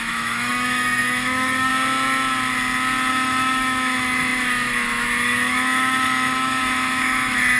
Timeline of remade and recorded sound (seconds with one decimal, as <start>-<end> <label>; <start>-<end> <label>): 0.0-1.7 remade; 1.7-3.1 recorded; 3.1-7.6 remade